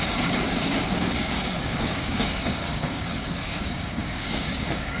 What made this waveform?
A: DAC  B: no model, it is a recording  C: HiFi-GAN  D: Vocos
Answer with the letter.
A